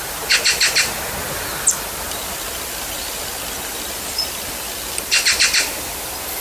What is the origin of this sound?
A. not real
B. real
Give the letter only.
B